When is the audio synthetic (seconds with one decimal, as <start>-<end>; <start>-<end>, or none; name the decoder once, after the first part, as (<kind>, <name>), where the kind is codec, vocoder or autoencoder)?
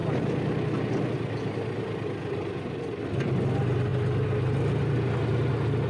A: none